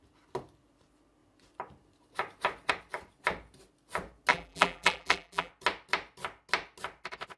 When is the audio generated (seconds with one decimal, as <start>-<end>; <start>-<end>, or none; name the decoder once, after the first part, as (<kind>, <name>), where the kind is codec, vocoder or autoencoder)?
4.3-5.5 (vocoder, BigVGAN v2)